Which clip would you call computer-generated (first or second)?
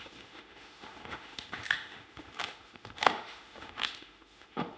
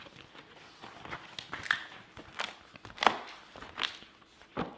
first